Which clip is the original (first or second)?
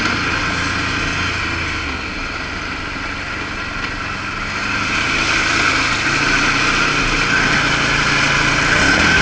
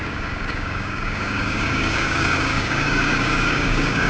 first